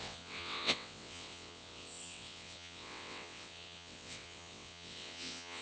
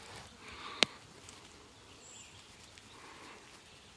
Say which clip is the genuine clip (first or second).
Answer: second